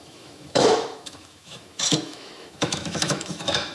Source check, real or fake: fake